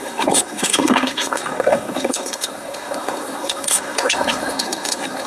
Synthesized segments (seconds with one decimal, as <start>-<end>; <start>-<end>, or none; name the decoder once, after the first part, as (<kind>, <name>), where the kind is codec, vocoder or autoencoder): 0.0-5.3 (codec, SNAC)